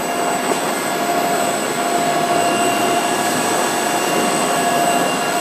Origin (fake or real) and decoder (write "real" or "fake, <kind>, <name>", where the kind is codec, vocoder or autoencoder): real